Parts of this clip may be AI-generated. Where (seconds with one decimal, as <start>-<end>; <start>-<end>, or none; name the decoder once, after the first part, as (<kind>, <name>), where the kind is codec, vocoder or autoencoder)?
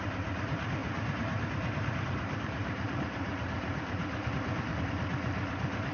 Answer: 0.8-4.3 (vocoder, BigVGAN v2)